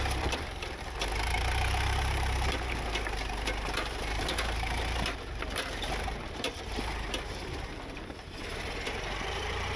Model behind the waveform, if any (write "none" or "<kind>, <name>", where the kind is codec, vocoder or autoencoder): vocoder, BigVGAN v2